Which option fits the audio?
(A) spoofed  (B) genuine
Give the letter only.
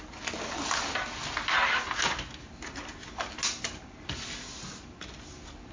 B